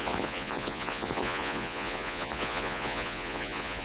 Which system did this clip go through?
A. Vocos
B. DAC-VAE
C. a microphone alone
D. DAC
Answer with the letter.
A